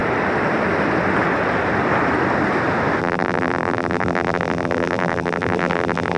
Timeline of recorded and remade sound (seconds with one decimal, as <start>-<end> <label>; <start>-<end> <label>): 0.0-3.0 recorded; 3.0-6.2 remade